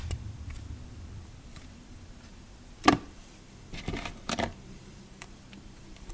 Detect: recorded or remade remade